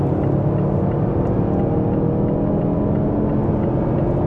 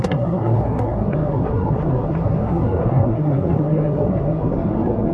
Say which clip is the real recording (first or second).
first